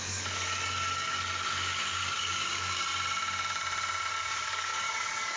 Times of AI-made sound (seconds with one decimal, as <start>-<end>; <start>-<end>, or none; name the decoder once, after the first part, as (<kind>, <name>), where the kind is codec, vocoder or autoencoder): 0.0-2.9 (codec, DAC); 4.1-5.4

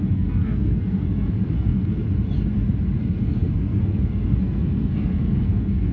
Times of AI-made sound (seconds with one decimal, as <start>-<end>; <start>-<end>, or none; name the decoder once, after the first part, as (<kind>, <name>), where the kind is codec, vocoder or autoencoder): 0.0-2.0 (codec, SNAC); 3.0-5.9

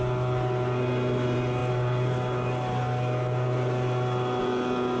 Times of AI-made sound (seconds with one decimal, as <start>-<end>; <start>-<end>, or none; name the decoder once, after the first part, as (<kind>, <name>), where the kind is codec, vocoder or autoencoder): none

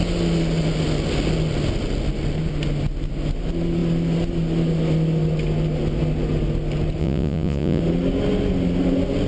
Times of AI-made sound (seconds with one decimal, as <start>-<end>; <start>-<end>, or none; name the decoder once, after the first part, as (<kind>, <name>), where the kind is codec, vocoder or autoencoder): 7.0-7.8 (vocoder, Vocos)

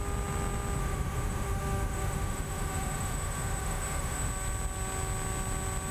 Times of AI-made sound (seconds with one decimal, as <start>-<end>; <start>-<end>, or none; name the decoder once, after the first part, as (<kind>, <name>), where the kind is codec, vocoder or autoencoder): 0.8-4.3 (autoencoder, DAC-VAE)

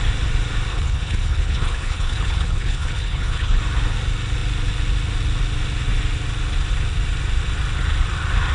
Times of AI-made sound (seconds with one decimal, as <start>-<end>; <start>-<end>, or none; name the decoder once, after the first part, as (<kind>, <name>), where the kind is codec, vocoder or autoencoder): 0.7-3.6 (codec, HILCodec)